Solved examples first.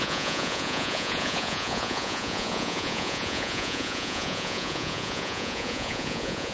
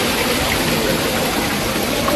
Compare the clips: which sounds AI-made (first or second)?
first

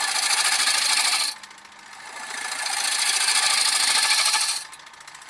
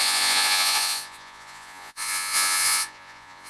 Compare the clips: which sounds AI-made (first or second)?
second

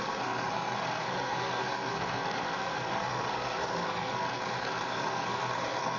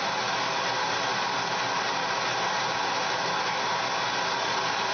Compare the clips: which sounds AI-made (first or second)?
first